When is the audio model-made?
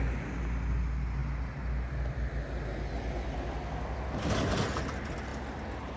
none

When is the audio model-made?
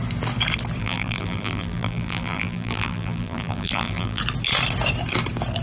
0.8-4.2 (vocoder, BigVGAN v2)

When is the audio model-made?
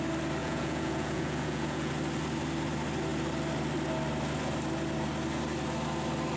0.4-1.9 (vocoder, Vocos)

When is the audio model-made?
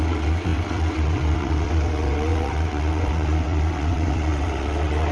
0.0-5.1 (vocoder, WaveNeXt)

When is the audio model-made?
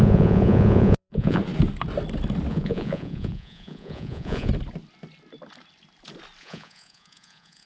0.0-1.4 (vocoder, Vocos); 2.5-4.5; 6.4-7.7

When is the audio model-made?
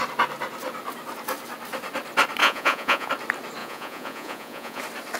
2.4-3.1 (vocoder, Vocos); 3.6-4.8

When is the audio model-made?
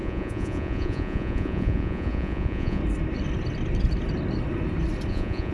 0.0-2.8 (vocoder, Vocos); 5.1-5.5